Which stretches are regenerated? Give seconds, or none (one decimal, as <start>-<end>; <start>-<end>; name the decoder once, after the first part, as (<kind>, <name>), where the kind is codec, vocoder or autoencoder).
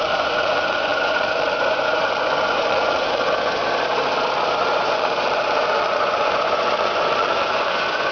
0.0-3.6 (vocoder, Vocos); 4.6-8.1